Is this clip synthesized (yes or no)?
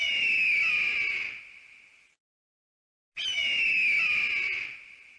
no